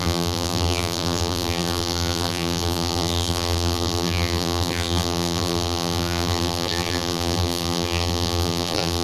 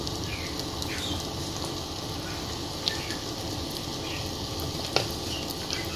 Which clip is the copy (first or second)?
first